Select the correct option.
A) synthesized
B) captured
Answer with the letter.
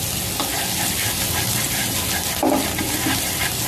B